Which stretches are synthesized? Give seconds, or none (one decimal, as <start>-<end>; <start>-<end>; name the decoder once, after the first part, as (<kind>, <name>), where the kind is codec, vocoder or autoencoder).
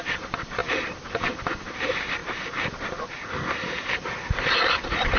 0.0-0.6 (vocoder, BigVGAN v2); 1.4-2.2